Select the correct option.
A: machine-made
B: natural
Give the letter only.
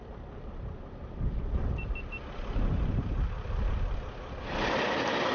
B